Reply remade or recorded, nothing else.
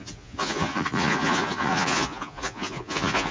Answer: remade